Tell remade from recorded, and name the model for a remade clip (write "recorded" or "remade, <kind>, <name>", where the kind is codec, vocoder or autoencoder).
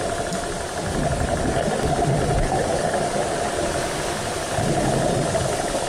recorded